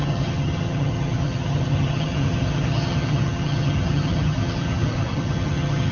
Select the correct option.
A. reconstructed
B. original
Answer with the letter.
A